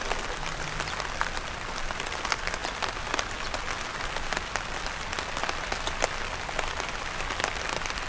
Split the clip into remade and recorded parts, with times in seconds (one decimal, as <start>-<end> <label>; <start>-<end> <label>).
0.0-8.1 recorded